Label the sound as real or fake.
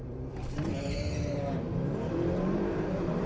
fake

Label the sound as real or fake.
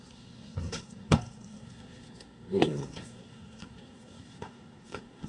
fake